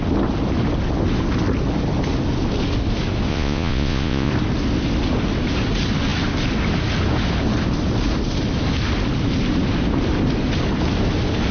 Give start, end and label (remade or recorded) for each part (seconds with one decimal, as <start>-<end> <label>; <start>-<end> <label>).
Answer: 0.0-3.3 recorded; 3.3-4.3 remade; 4.3-11.5 recorded